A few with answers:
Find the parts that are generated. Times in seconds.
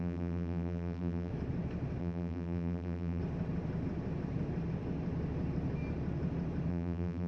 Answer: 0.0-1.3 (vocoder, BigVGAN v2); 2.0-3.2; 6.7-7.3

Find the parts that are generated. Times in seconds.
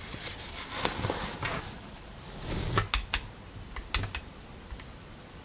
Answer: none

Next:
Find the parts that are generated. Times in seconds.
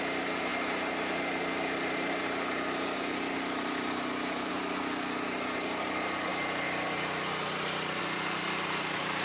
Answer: 0.0-6.3 (vocoder, BigVGAN v2); 8.0-9.2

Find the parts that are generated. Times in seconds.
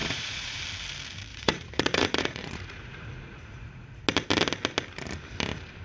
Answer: 0.0-0.6 (vocoder, Vocos); 1.3-4.0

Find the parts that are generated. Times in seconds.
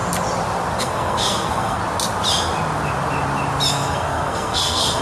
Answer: 0.8-1.8 (codec, SNAC); 3.7-5.0